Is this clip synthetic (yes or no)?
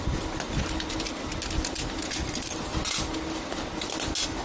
no